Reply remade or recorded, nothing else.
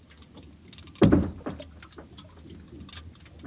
recorded